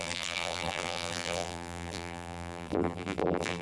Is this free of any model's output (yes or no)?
no